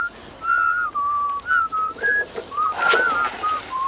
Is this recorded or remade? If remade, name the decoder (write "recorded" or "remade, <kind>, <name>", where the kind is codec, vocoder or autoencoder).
recorded